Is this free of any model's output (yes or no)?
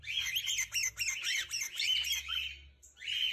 yes